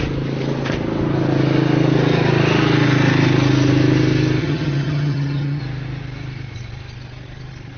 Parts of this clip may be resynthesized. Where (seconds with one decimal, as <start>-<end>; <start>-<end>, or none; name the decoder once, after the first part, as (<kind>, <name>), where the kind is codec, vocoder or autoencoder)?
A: 4.4-5.6 (vocoder, HiFi-GAN)